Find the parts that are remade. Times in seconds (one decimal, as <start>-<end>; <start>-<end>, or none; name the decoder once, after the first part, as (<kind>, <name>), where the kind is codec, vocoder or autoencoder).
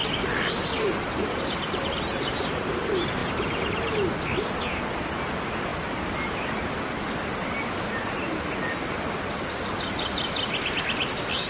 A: 0.0-2.4 (vocoder, BigVGAN v2); 5.7-6.5